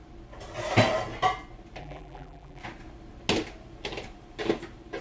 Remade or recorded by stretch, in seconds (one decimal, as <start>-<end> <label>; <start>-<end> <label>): 0.0-1.8 recorded; 1.8-2.6 remade; 2.6-5.0 recorded